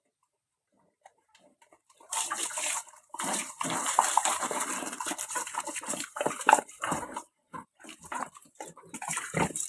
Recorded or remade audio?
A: remade